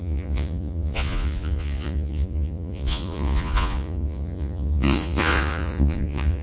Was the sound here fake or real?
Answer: fake